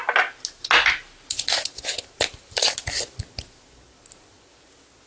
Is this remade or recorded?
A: recorded